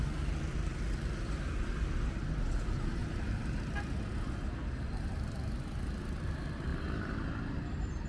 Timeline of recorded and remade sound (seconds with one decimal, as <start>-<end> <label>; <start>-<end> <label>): 0.0-8.1 recorded